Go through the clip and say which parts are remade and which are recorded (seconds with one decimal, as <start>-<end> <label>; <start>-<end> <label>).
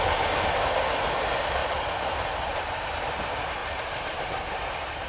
0.0-1.6 recorded; 1.6-3.0 remade; 3.0-3.6 recorded; 3.6-5.1 remade